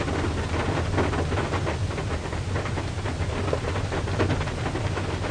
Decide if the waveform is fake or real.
real